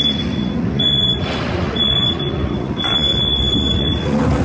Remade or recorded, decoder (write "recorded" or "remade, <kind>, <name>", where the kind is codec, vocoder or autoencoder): remade, vocoder, Vocos